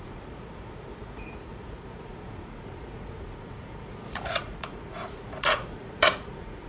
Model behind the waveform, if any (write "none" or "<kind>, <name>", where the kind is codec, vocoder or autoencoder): vocoder, Vocos